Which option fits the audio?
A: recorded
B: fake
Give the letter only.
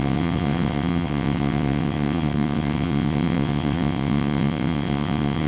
B